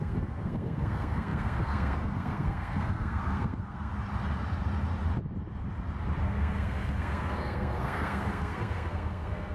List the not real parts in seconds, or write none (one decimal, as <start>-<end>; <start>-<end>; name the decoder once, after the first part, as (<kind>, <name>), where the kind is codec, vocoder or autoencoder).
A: 0.0-3.9 (codec, SNAC); 6.2-9.5